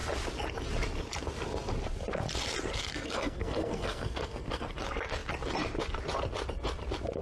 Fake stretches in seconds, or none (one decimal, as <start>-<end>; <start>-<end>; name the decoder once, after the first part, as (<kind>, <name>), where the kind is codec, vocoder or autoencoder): 2.8-4.7 (codec, SNAC)